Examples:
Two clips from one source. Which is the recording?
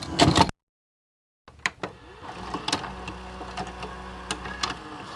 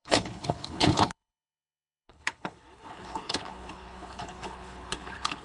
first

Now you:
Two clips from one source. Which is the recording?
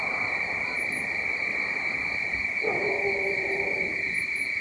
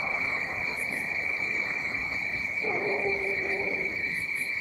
first